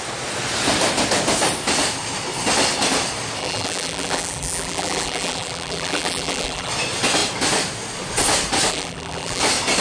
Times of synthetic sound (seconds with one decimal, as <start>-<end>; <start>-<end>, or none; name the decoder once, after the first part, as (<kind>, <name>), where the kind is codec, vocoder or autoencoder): 3.4-6.7 (vocoder, BigVGAN v2); 8.7-9.4

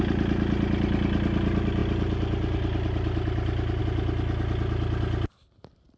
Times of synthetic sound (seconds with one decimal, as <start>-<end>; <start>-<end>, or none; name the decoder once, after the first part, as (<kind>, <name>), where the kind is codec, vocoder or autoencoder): none

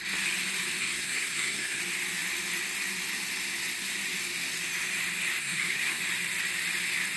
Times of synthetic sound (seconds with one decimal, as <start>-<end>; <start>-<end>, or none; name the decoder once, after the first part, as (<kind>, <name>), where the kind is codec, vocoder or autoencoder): 0.8-1.8 (codec, SNAC); 5.4-6.0

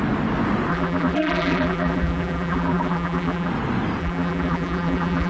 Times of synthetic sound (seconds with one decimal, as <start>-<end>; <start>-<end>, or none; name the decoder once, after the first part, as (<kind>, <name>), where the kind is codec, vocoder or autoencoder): 0.7-3.5 (vocoder, BigVGAN v2); 4.0-5.3

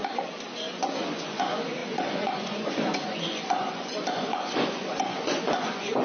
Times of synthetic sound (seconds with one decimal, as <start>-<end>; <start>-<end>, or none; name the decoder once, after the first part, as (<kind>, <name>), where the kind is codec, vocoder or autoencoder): 0.7-6.0 (vocoder, Vocos)

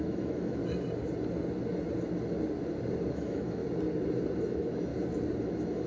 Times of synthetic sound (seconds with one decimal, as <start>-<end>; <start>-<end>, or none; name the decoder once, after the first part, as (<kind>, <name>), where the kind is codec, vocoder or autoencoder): 0.0-0.6 (autoencoder, DAC-VAE); 3.1-3.6; 4.4-4.9; 5.4-5.9